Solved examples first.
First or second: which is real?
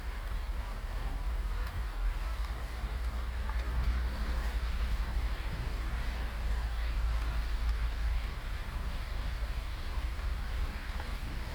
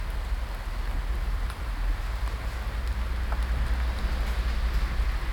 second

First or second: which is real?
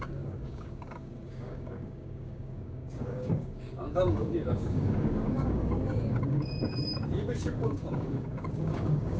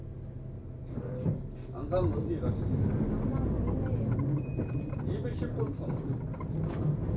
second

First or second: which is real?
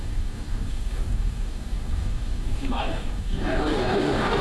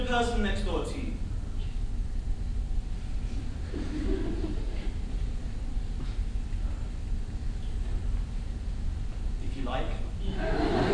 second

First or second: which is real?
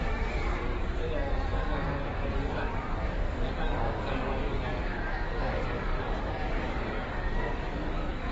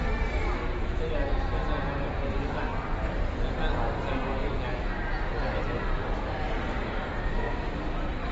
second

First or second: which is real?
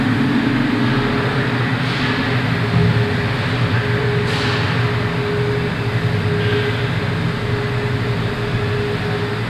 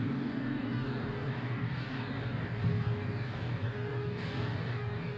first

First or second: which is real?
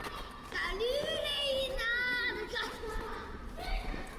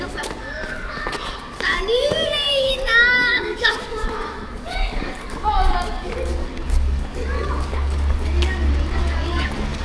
first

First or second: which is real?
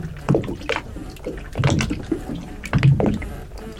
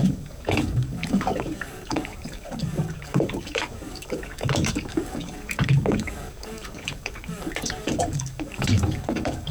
first